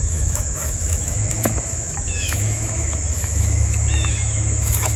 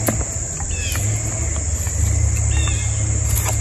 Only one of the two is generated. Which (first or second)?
first